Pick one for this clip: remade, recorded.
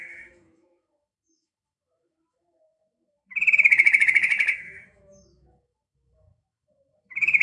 remade